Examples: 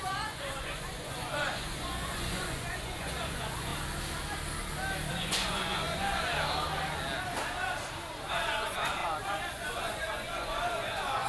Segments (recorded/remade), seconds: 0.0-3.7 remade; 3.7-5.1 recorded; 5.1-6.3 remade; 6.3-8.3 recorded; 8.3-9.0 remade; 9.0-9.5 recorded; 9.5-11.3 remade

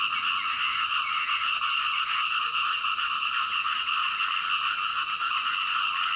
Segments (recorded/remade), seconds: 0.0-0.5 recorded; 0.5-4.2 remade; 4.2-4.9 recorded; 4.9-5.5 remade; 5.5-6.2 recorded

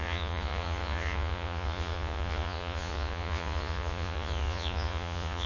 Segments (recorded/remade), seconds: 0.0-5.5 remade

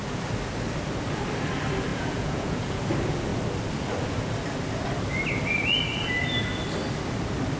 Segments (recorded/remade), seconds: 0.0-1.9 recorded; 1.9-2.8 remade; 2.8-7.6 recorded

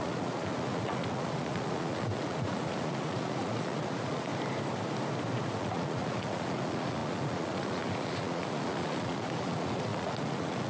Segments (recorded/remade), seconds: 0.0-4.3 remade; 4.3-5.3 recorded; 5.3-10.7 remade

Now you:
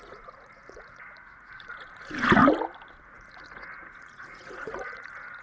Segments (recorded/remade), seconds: 0.0-2.4 remade; 2.4-3.0 recorded; 3.0-5.4 remade

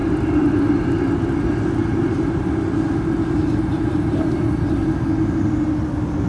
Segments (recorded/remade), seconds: 0.0-6.3 recorded